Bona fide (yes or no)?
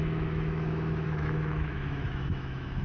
no